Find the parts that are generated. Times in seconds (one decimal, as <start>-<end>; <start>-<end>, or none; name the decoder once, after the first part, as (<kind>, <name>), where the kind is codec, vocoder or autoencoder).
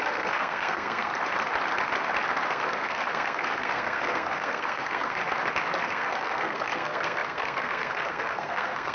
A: 0.0-1.1 (codec, SNAC); 2.5-5.2; 5.8-8.9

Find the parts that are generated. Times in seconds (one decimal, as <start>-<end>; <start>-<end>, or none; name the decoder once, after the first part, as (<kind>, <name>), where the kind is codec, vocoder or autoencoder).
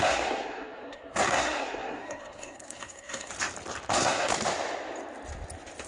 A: 0.0-3.3 (codec, SNAC); 3.9-4.3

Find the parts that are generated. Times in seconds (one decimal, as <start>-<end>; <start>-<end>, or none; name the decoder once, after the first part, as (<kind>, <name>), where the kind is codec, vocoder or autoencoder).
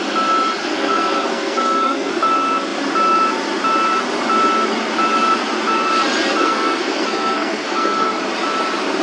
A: 0.6-2.1 (codec, SNAC); 6.4-8.2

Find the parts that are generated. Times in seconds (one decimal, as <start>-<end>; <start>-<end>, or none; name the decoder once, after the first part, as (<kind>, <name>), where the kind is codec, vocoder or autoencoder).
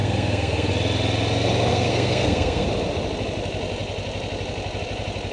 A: 0.0-0.7 (codec, SNAC); 1.7-2.7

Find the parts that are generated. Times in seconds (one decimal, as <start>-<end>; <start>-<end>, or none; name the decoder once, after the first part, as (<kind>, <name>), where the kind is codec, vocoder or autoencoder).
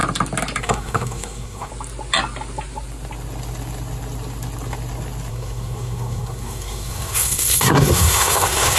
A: 0.6-1.7 (codec, SNAC); 5.3-8.8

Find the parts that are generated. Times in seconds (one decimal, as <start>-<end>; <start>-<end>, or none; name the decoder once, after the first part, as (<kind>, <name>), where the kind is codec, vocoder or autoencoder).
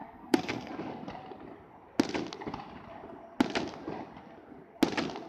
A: 0.0-0.7 (codec, SNAC)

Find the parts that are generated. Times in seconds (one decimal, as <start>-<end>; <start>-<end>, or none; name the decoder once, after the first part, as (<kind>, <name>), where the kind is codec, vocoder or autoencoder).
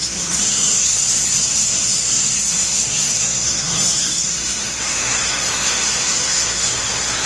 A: 0.0-7.3 (codec, SNAC)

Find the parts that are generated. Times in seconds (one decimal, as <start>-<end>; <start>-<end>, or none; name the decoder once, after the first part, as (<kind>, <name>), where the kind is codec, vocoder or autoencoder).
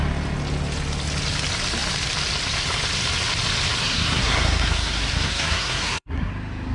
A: 3.8-6.3 (codec, SNAC)